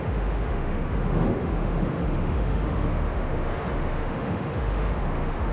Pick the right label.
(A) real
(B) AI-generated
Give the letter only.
B